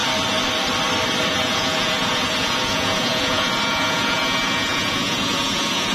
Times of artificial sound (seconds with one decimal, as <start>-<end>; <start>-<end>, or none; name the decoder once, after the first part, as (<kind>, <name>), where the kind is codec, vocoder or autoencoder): 1.3-5.9 (vocoder, Vocos)